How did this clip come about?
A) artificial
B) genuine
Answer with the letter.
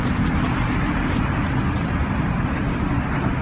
B